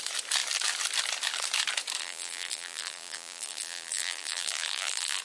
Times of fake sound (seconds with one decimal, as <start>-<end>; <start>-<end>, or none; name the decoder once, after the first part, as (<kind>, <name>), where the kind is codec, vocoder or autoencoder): 2.0-5.2 (vocoder, BigVGAN v2)